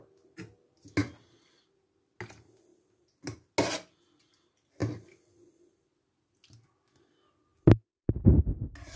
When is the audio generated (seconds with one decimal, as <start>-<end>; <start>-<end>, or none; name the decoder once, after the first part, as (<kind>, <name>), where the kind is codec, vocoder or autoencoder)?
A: none